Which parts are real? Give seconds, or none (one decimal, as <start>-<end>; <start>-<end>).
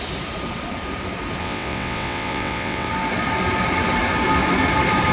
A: 0.0-1.4; 2.9-5.1